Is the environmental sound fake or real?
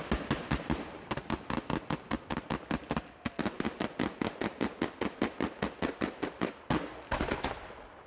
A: real